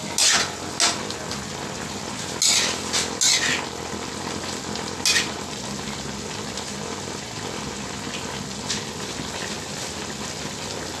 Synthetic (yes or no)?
no